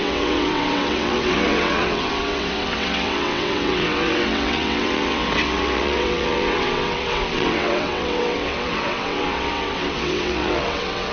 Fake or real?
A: fake